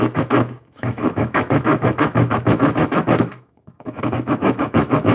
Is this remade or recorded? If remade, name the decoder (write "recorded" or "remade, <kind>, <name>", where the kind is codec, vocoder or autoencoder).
remade, autoencoder, DAC-VAE